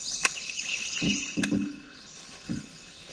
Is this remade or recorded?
remade